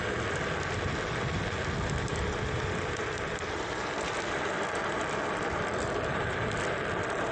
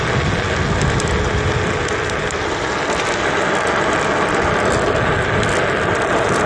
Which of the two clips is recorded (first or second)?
second